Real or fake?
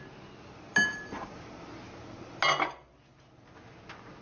real